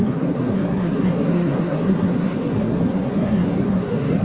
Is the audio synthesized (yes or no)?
yes